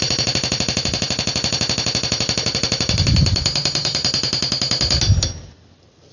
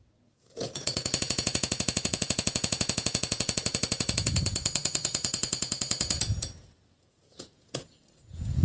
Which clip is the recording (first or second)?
first